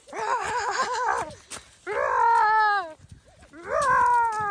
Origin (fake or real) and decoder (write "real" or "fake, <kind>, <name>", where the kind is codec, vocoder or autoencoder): real